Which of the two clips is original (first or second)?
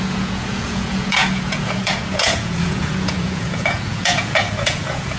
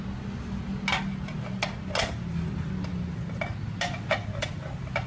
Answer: second